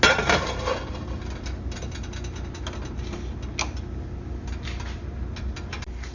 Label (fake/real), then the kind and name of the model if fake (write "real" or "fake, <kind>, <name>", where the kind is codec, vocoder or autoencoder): real